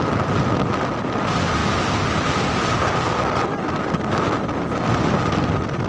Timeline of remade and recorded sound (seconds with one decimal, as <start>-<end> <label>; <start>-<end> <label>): 0.0-5.9 recorded